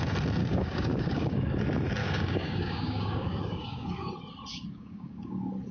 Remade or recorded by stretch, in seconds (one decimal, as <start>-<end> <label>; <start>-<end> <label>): 0.0-0.4 recorded; 0.4-1.6 remade; 1.6-2.0 recorded; 2.0-4.1 remade; 4.1-4.5 recorded; 4.5-5.3 remade; 5.3-5.7 recorded